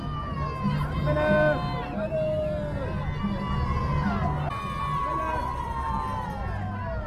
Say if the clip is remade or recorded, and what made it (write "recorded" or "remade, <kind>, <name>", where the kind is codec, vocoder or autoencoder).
recorded